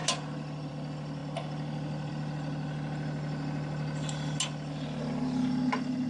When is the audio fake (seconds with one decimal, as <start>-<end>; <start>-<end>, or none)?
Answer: none